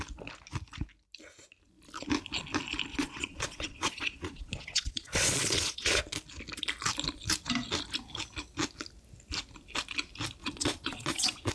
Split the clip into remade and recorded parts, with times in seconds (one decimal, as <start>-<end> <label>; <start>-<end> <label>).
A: 0.0-2.9 recorded; 2.9-6.0 remade; 6.0-10.4 recorded; 10.4-11.5 remade